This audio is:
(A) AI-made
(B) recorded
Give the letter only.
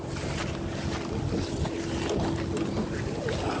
B